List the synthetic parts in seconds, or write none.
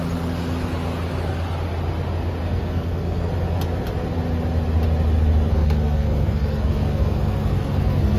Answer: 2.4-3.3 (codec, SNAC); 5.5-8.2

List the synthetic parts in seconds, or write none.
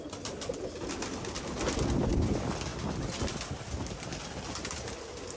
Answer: none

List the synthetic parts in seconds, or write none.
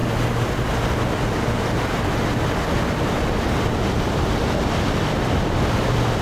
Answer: none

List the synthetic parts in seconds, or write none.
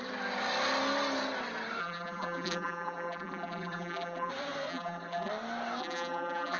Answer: 1.8-4.3 (vocoder, BigVGAN v2); 4.7-5.3; 5.8-6.6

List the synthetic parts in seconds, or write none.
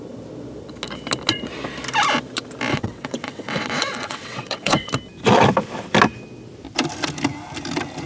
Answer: 2.7-4.9 (vocoder, WaveNeXt)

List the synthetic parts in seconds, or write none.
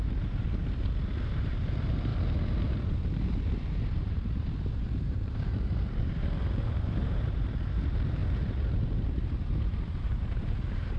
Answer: 0.0-2.1 (vocoder, BigVGAN v2); 2.7-11.0